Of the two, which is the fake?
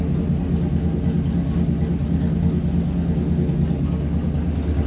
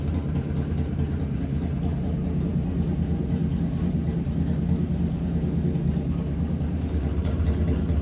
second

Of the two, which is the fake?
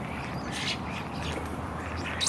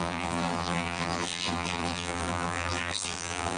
second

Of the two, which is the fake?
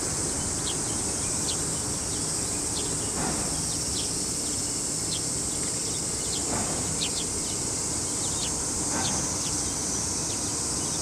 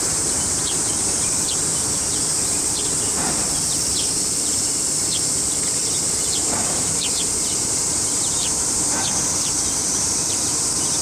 second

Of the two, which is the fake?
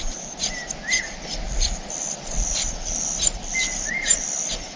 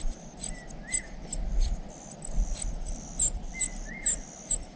first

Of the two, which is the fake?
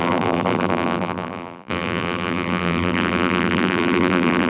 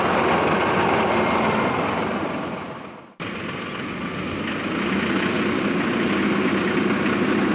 first